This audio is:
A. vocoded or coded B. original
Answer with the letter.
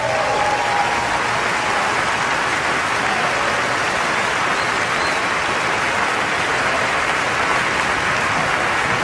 B